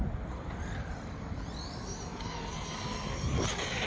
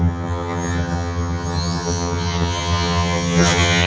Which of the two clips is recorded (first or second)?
first